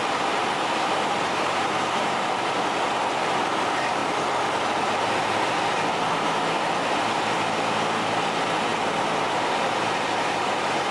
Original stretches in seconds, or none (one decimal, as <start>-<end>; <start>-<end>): 0.0-10.9